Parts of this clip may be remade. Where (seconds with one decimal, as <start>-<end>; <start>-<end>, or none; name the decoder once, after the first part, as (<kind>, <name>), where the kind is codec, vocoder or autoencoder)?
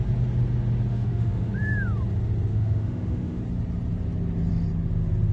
0.9-1.5 (autoencoder, DAC-VAE); 2.5-3.4